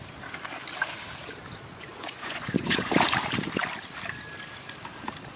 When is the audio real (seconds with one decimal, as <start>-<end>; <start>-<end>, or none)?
0.0-1.7; 2.9-5.4